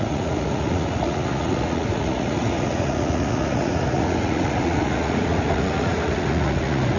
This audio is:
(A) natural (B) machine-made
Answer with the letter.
B